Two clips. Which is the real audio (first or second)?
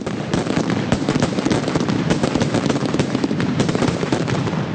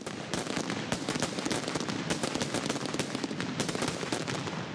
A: second